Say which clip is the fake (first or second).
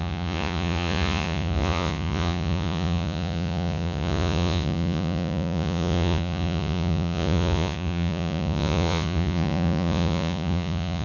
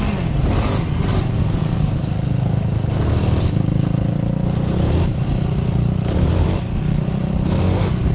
first